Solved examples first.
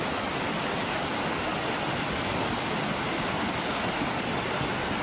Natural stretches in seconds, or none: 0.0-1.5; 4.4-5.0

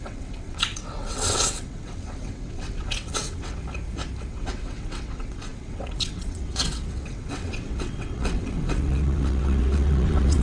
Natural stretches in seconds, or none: 3.6-4.3

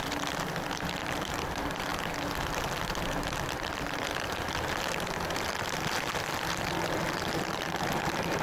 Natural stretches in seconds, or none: 1.9-6.1

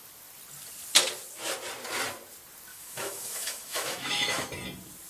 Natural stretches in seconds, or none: 0.0-2.7; 4.5-5.1